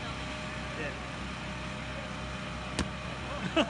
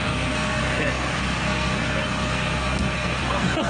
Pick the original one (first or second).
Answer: first